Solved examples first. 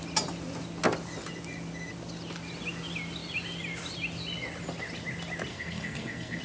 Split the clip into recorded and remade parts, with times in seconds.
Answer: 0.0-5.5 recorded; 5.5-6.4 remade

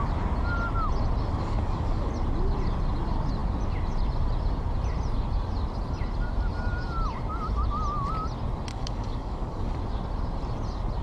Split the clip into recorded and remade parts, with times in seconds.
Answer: 0.0-1.3 recorded; 1.3-2.1 remade; 2.1-8.7 recorded; 8.7-9.8 remade; 9.8-11.0 recorded